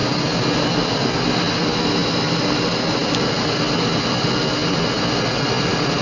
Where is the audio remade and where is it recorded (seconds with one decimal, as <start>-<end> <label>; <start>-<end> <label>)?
0.0-6.0 recorded